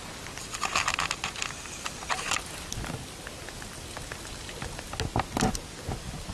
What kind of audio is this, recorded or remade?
recorded